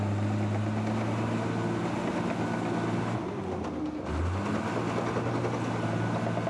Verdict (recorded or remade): recorded